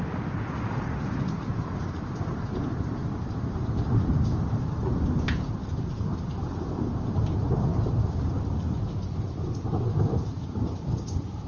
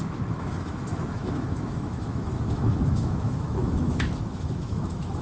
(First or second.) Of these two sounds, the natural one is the first